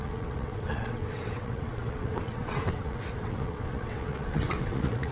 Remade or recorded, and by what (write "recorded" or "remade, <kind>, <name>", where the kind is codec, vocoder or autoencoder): remade, vocoder, WaveNeXt